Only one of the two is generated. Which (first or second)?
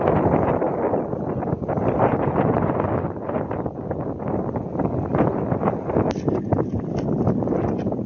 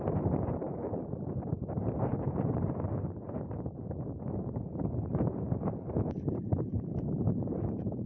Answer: second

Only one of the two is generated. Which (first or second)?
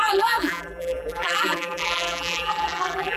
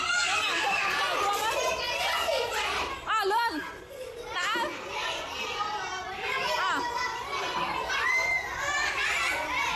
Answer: first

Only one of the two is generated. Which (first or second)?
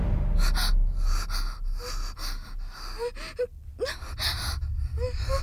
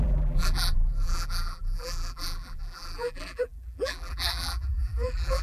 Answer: second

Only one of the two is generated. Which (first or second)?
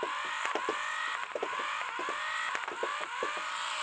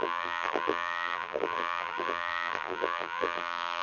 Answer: second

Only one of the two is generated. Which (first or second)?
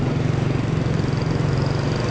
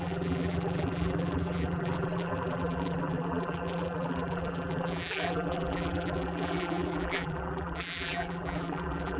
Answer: second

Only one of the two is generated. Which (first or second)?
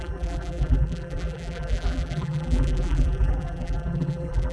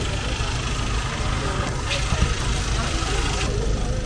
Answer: first